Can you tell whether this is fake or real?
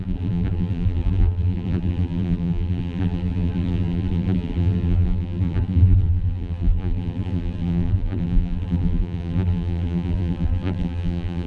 fake